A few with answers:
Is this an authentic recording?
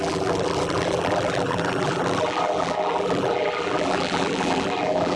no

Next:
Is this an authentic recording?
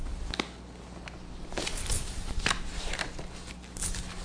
yes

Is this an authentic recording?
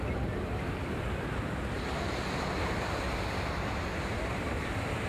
yes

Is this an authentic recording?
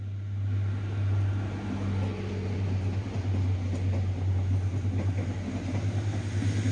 yes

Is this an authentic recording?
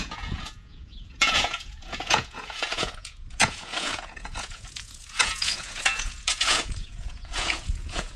no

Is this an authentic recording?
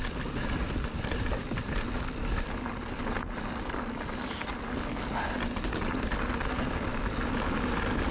yes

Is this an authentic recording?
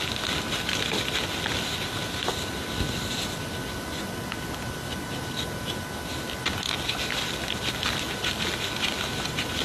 yes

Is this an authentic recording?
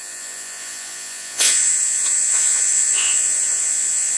no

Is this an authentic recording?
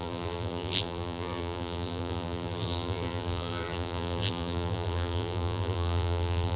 no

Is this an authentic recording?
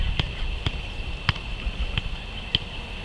yes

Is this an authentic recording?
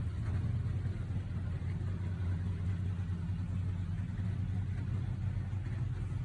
yes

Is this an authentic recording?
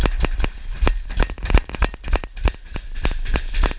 no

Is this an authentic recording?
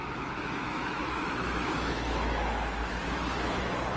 no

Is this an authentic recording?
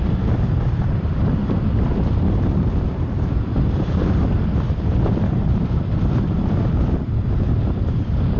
no